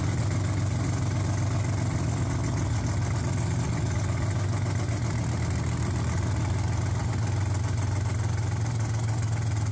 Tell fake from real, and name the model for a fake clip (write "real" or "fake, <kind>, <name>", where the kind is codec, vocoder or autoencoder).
real